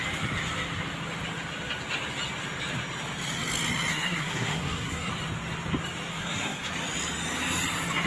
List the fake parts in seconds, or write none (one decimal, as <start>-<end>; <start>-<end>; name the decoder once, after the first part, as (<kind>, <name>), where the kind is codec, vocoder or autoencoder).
3.9-5.1 (codec, SNAC); 6.1-6.7